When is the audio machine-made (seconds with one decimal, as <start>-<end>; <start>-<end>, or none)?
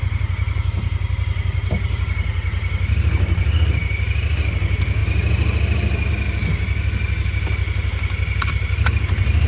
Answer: none